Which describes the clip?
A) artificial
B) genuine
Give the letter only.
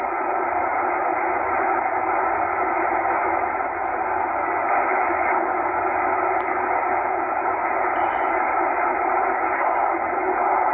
B